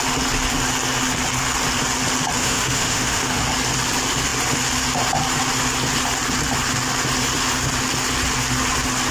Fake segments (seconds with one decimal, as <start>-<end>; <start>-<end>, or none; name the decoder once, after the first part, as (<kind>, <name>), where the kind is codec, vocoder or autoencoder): 2.4-3.4 (autoencoder, DAC-VAE)